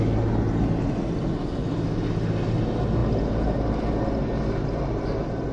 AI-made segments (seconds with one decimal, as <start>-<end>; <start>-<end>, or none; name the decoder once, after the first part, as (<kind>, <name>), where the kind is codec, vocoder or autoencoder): none